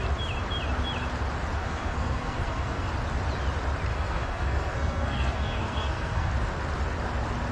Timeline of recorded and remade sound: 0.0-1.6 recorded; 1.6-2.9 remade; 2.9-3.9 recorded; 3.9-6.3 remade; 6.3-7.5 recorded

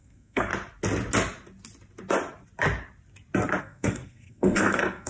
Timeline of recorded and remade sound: 0.0-0.5 remade; 0.5-3.6 recorded; 3.6-5.1 remade

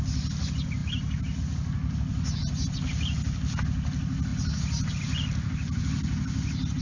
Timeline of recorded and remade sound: 0.0-6.8 recorded

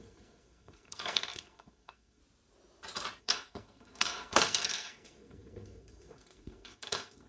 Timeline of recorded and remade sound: 0.0-2.2 remade; 2.2-3.2 recorded; 3.2-7.3 remade

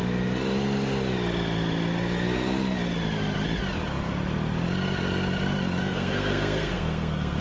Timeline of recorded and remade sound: 0.0-5.8 recorded; 5.8-7.4 remade

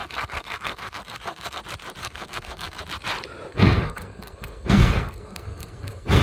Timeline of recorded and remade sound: 0.0-1.6 remade; 1.6-2.0 recorded; 2.0-2.8 remade; 2.8-3.5 recorded; 3.5-6.2 remade

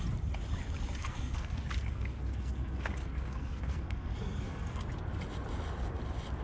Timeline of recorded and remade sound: 0.0-1.0 recorded; 1.0-4.8 remade; 4.8-6.4 recorded

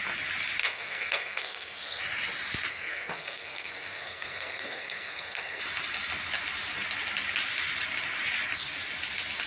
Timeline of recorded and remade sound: 0.0-0.6 recorded; 0.6-2.0 remade; 2.0-2.7 recorded; 2.7-5.6 remade; 5.6-9.5 recorded